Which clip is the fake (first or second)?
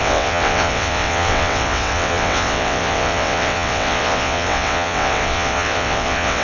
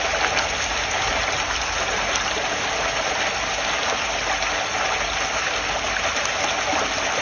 first